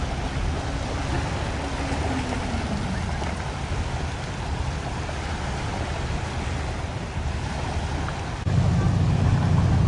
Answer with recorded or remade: recorded